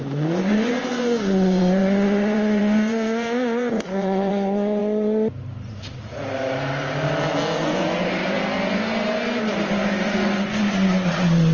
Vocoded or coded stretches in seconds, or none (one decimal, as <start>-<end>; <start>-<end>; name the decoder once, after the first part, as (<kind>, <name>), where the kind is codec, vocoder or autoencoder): 0.0-4.8 (vocoder, Vocos); 7.6-8.2; 10.0-11.5